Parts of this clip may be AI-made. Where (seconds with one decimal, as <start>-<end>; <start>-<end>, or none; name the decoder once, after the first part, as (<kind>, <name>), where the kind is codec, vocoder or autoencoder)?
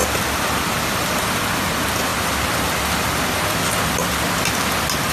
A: 0.0-1.3 (vocoder, BigVGAN v2)